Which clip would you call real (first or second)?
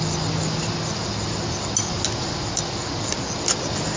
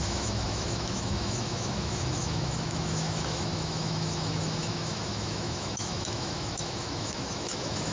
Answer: first